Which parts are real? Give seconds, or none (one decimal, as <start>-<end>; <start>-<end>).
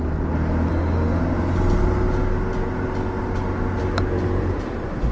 0.0-0.7; 1.2-5.1